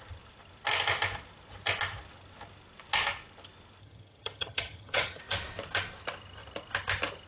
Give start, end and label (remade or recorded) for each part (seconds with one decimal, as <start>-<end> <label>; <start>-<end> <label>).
0.0-3.8 recorded; 3.8-5.2 remade; 5.2-7.3 recorded